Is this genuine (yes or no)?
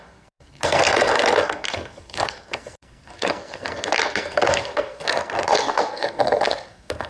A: no